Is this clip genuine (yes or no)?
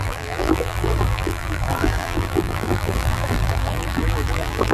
no